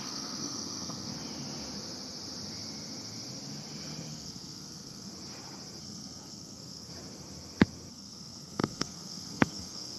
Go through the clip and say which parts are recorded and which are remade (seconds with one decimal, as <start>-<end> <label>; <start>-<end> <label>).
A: 0.0-1.1 remade; 1.1-4.1 recorded; 4.1-5.1 remade; 5.1-5.8 recorded; 5.8-6.9 remade; 6.9-7.9 recorded; 7.9-10.0 remade